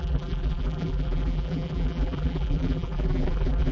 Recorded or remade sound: remade